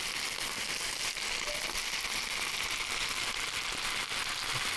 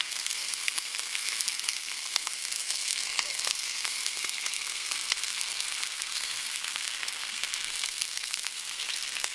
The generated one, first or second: second